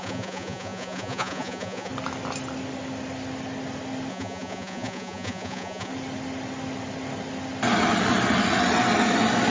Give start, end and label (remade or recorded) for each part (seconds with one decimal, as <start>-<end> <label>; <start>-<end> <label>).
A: 0.0-1.9 remade; 1.9-4.1 recorded; 4.1-5.9 remade; 5.9-9.5 recorded